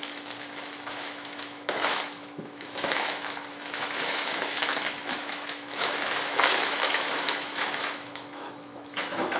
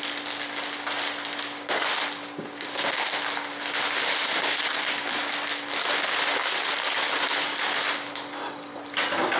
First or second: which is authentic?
second